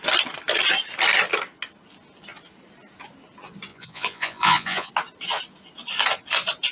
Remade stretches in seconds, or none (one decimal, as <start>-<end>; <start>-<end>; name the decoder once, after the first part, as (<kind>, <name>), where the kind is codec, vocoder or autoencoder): 3.7-4.9 (vocoder, Vocos)